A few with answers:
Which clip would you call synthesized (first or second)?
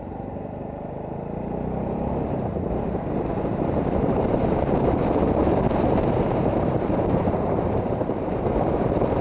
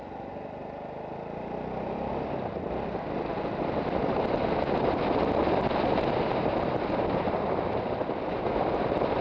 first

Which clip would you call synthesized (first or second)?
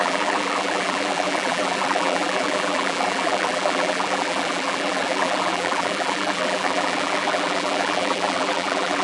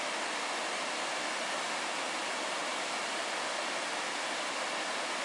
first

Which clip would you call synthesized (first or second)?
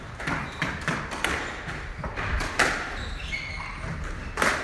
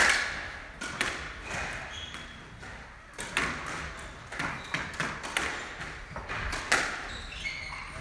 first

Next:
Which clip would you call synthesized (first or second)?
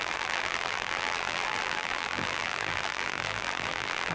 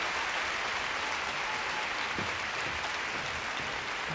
first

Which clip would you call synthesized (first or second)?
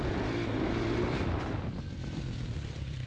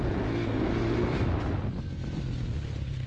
first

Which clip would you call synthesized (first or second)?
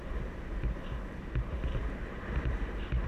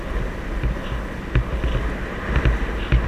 first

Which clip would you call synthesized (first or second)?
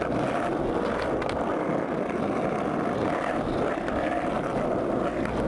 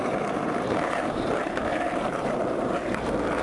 second